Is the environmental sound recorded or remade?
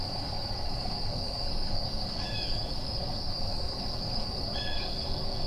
remade